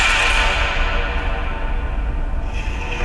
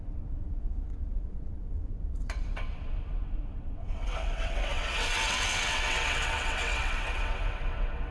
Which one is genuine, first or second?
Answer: first